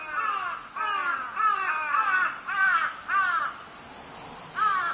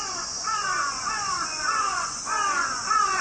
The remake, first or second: second